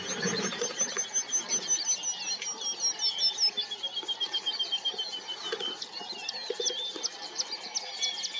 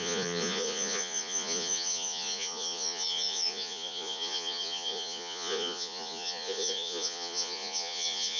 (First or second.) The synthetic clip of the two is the second